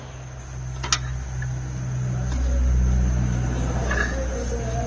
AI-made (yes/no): no